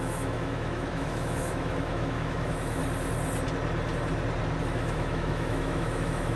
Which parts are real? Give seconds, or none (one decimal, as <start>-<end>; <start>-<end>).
2.8-4.6